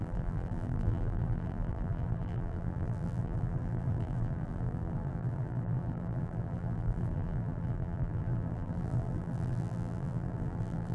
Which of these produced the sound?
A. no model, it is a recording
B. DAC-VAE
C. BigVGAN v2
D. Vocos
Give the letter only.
C